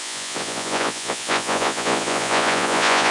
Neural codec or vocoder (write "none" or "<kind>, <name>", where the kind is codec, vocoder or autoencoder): vocoder, Vocos